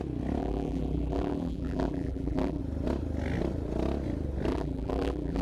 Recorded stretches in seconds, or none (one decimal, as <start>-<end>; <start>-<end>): 0.0-0.4; 2.6-4.5